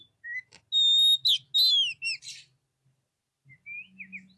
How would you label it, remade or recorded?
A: recorded